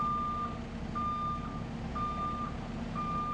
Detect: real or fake real